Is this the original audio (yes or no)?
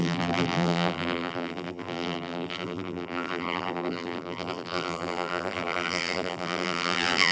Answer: no